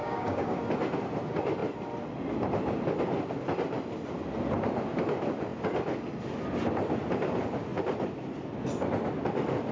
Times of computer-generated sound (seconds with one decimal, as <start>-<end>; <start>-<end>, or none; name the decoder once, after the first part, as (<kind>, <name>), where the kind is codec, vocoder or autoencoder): 0.0-0.6 (codec, DAC)